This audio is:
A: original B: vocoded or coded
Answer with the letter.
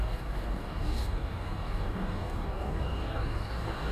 B